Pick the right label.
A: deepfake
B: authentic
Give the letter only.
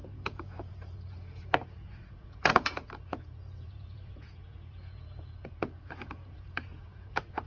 A